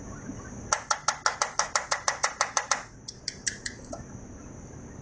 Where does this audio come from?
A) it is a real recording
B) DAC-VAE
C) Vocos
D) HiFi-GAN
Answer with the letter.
A